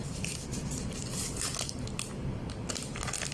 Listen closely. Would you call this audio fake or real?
real